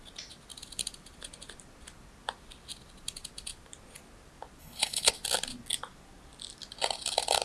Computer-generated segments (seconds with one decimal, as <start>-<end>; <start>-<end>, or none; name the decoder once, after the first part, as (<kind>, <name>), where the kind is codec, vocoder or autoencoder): 4.6-5.1 (codec, HILCodec)